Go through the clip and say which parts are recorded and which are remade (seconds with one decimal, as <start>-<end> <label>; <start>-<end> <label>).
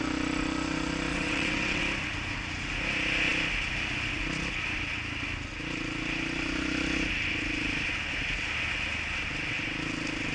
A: 0.0-1.1 recorded; 1.1-1.8 remade; 1.8-10.3 recorded